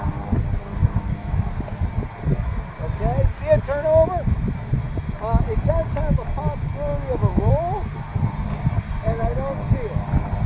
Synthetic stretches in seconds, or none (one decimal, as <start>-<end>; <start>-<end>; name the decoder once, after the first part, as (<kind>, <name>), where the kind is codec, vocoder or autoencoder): 0.8-1.5 (autoencoder, DAC-VAE); 6.9-7.5

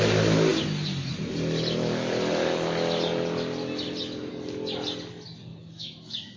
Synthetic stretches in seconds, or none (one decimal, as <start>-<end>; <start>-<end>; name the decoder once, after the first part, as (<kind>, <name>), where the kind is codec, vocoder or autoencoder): 5.5-6.4 (autoencoder, DAC-VAE)